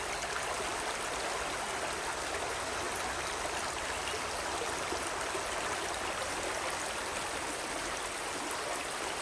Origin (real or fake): real